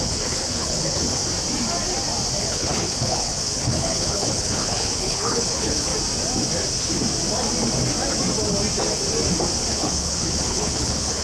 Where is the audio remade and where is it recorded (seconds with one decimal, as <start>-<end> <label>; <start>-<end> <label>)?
0.0-1.2 remade; 1.2-2.4 recorded; 2.4-5.9 remade; 5.9-9.7 recorded; 9.7-11.2 remade